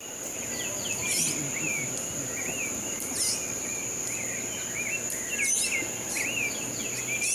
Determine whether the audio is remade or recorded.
recorded